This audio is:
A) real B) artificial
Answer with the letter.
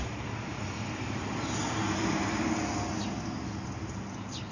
A